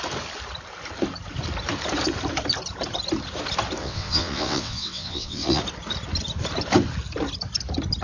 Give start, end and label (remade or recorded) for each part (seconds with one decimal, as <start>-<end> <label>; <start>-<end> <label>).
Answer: 0.0-3.8 recorded; 3.8-5.6 remade; 5.6-8.0 recorded